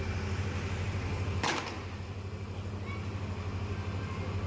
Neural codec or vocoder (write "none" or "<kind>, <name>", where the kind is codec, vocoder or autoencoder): none